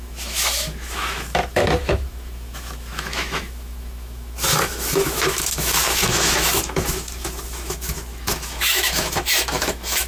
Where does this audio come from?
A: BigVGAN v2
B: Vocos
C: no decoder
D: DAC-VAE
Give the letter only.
D